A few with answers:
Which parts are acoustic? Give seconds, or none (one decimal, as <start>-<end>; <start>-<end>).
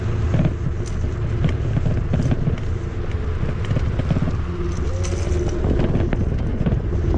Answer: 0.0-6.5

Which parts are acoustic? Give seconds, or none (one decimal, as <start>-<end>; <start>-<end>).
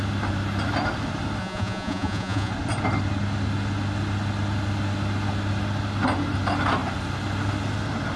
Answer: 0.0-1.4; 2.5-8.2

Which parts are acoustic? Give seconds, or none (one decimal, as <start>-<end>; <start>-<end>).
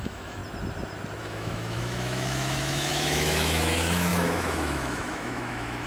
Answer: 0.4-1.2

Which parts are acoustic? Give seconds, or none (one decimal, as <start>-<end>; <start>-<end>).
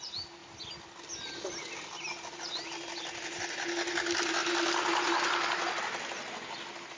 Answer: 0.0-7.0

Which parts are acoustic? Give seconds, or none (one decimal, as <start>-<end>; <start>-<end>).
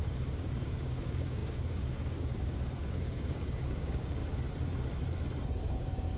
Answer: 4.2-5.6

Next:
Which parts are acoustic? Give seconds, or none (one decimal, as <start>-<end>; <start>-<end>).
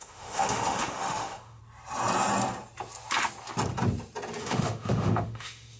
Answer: 1.6-4.4